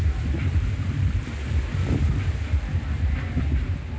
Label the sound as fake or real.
real